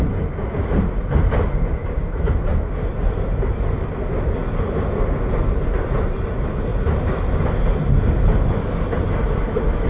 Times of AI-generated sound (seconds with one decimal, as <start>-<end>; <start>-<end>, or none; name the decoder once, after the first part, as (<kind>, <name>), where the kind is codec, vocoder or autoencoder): none